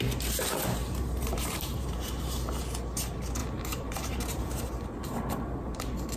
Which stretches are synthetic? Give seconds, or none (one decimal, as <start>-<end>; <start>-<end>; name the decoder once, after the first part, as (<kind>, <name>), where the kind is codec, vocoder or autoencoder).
0.8-2.6 (vocoder, BigVGAN v2); 3.4-4.7